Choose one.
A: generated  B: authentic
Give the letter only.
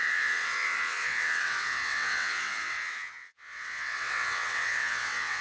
A